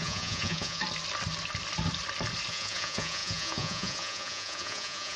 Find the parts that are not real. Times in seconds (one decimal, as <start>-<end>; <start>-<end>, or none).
0.0-0.8; 2.5-5.2